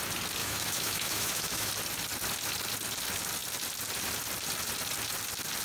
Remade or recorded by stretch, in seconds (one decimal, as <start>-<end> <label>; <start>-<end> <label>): 0.0-0.4 recorded; 0.4-1.7 remade; 1.7-5.6 recorded